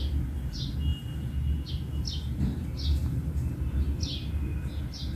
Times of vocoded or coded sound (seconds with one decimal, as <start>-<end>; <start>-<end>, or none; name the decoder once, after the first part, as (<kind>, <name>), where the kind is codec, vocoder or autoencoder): none